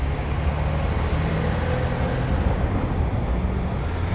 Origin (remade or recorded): recorded